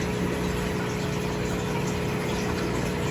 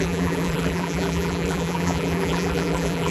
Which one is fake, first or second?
second